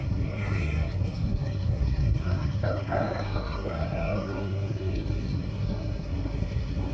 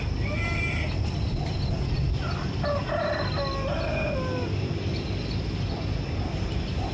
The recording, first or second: second